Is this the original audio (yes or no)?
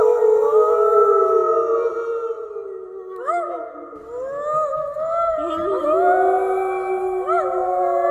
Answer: yes